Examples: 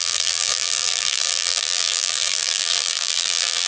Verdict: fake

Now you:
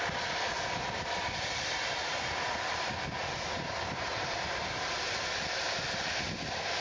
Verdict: real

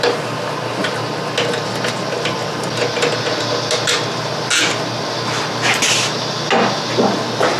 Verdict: real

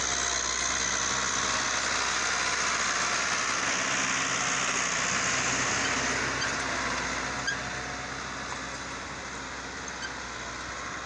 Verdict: real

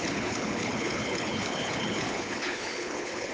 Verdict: fake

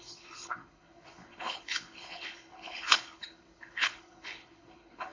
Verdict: fake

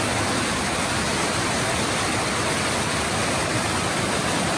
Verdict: real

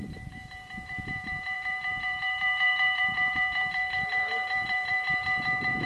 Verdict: fake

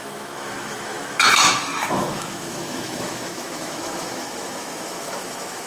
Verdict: fake